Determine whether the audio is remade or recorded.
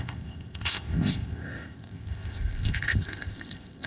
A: remade